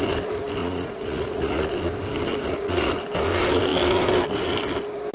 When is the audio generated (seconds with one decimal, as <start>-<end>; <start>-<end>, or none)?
0.6-1.7; 2.3-2.9